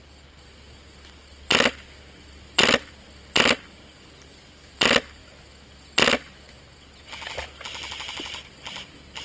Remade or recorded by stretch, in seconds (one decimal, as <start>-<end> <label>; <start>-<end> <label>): 0.0-2.6 recorded; 2.6-3.1 remade; 3.1-9.2 recorded